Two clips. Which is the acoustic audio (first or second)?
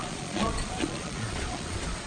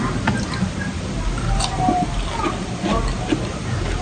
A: second